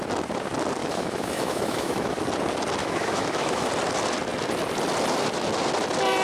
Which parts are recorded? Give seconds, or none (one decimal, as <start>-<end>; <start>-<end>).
0.0-0.8; 2.2-2.8; 3.7-6.2